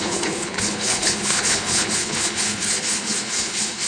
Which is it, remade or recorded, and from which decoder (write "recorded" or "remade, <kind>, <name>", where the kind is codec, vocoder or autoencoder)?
remade, codec, HILCodec